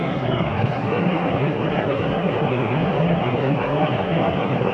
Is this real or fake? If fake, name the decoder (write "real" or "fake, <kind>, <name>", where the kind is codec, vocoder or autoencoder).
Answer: fake, codec, SNAC